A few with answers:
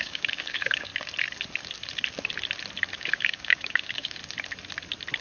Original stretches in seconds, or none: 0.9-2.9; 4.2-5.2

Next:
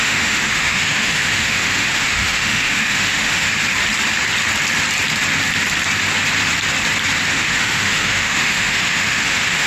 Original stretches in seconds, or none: 3.5-7.3

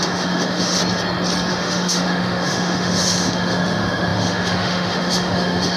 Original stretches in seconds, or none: 0.8-1.5

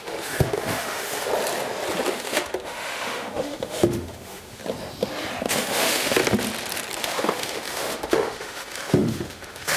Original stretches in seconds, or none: 1.3-2.1; 4.6-5.4; 6.2-7.0

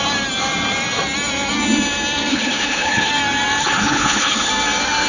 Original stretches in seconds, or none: 0.0-2.3; 3.1-3.6; 4.5-5.1

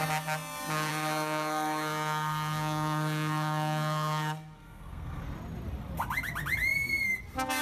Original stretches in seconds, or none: 0.0-0.9; 5.2-7.6

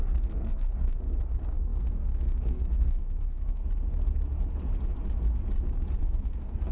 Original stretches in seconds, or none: 3.6-6.0